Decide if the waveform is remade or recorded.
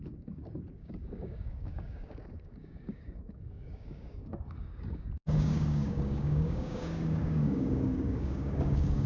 remade